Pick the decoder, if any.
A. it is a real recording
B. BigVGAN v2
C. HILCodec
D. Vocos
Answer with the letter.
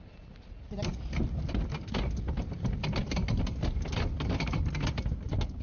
A